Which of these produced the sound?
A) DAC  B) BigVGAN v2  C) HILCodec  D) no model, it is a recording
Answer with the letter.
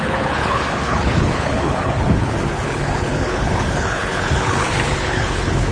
C